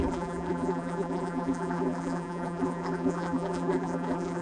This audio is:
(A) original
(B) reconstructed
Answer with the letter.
B